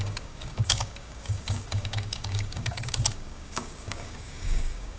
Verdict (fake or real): fake